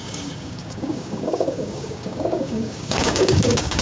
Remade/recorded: remade